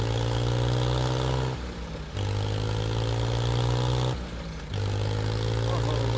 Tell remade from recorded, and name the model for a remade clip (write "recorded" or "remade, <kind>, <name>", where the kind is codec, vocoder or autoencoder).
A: recorded